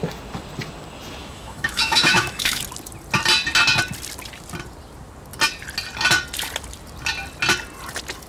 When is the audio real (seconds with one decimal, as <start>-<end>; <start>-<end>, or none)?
0.0-1.2; 2.6-8.3